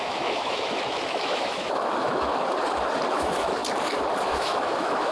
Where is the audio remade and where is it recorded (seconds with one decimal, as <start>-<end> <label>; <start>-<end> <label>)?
0.0-2.3 remade; 2.3-3.1 recorded; 3.1-3.6 remade; 3.6-4.2 recorded; 4.2-5.1 remade

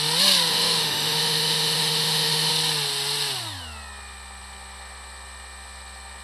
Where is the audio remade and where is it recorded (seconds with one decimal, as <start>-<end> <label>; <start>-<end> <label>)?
0.0-0.5 recorded; 0.5-2.5 remade; 2.5-6.2 recorded

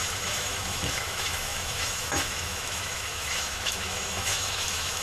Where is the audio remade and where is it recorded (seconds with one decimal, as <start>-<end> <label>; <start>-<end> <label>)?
0.0-5.0 remade

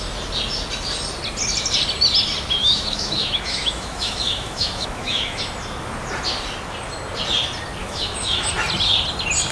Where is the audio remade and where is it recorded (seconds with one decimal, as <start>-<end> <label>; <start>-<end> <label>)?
0.0-2.6 recorded; 2.6-5.4 remade; 5.4-7.8 recorded; 7.8-8.5 remade; 8.5-9.5 recorded

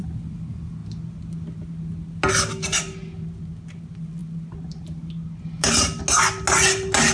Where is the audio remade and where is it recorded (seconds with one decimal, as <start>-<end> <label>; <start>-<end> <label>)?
0.0-7.1 recorded